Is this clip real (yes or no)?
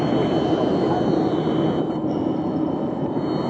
yes